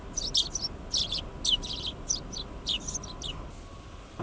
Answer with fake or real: real